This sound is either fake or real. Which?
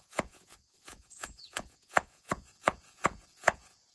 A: fake